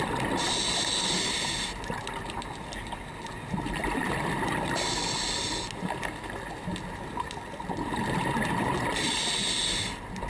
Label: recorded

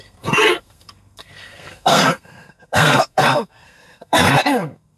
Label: remade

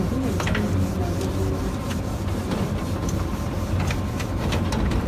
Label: recorded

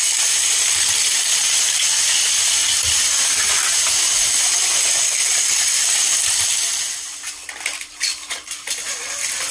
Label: recorded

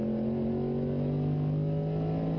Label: recorded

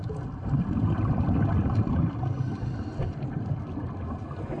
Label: recorded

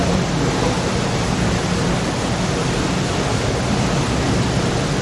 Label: recorded